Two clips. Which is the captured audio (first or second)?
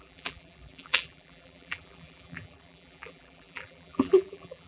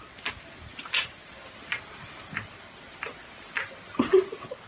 second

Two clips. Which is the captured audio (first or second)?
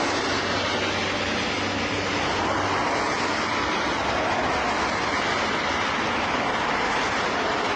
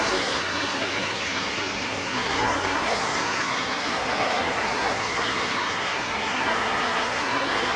first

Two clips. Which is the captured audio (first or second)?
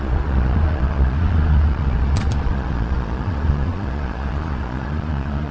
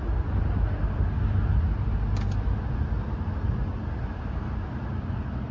second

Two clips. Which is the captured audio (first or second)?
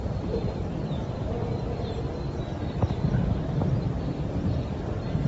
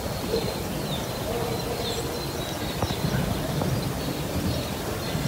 second